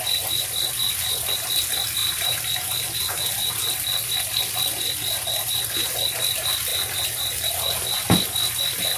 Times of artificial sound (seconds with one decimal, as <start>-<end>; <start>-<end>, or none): 2.0-3.3